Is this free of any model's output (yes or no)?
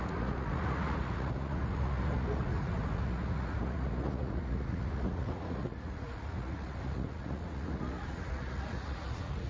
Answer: no